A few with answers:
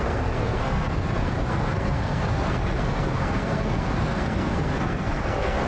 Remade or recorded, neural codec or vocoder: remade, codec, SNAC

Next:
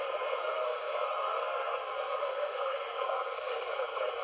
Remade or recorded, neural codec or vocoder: remade, codec, SNAC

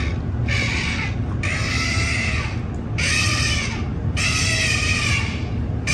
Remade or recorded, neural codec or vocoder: recorded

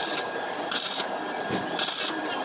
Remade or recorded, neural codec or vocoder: recorded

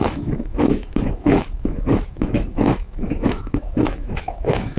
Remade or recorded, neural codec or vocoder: remade, autoencoder, DAC-VAE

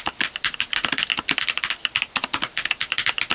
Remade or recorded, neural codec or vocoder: recorded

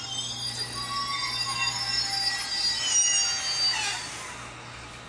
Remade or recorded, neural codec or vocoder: recorded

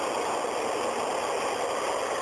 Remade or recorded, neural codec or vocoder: recorded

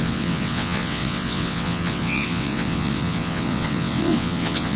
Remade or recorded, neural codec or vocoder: remade, vocoder, WaveNeXt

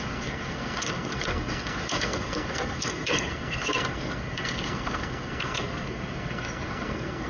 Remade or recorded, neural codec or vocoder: remade, codec, SNAC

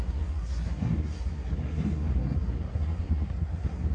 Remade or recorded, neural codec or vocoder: remade, codec, SNAC